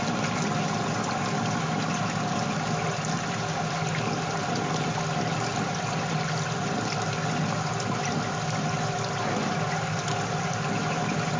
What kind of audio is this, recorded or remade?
recorded